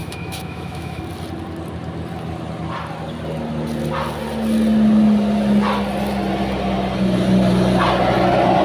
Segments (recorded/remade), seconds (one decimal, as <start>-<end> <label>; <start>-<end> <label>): 0.0-1.0 remade; 1.0-8.6 recorded